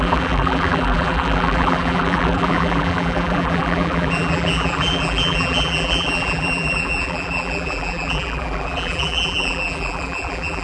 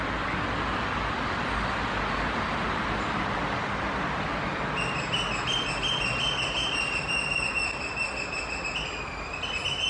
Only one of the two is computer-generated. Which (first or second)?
first